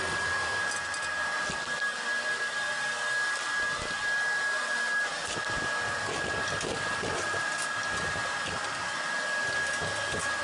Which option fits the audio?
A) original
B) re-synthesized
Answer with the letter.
A